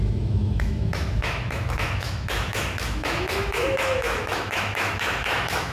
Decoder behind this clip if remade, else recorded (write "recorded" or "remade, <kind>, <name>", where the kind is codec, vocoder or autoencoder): remade, autoencoder, DAC-VAE